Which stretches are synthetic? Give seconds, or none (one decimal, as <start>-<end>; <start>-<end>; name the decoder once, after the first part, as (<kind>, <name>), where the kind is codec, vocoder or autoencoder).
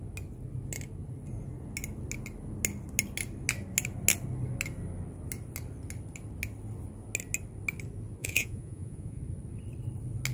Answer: 8.2-9.2 (vocoder, Vocos)